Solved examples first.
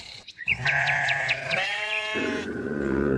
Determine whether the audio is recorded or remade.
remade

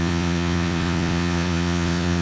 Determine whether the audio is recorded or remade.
remade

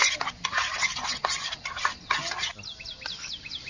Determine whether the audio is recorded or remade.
recorded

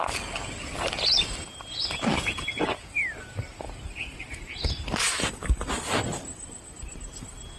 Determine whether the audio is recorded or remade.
recorded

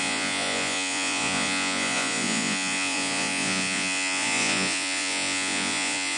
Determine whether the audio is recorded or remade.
remade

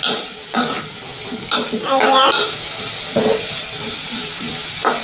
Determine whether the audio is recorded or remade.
recorded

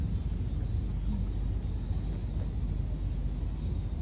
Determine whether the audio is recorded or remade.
recorded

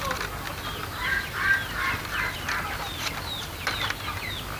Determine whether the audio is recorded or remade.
recorded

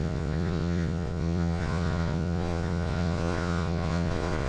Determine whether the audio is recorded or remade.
remade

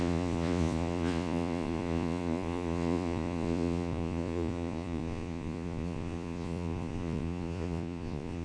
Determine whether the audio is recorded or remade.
remade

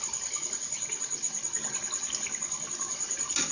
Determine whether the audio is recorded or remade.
recorded